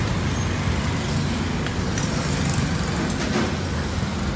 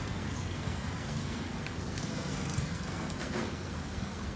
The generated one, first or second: second